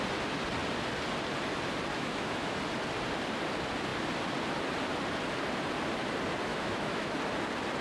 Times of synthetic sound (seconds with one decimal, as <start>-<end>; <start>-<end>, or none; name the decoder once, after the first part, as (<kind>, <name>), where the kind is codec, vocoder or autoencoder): 1.9-2.6 (autoencoder, DAC-VAE); 6.5-7.1